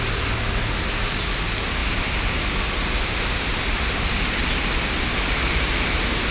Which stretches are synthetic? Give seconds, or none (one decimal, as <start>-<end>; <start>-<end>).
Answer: none